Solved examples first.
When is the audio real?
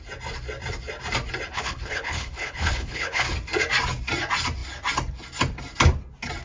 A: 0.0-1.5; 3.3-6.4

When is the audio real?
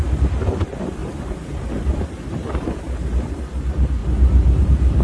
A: 4.0-4.6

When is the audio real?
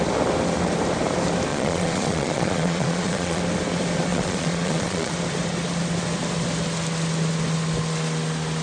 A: 0.0-1.5; 3.4-4.1; 5.1-8.6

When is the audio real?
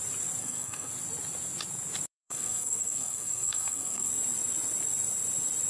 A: 0.0-0.4; 0.9-2.1; 4.1-5.7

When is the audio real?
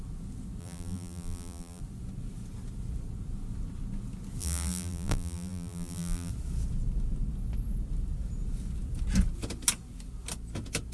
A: 0.0-0.6; 1.8-4.4; 6.3-10.9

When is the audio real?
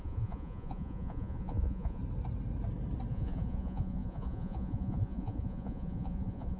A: 2.0-3.1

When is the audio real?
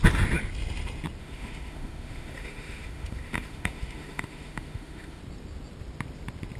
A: 0.0-1.2; 5.2-6.6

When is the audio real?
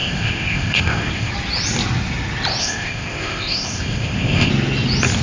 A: 1.3-2.6; 4.5-5.2